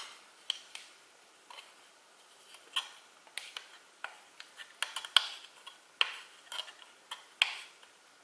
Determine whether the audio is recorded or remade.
recorded